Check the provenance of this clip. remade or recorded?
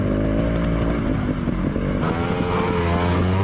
recorded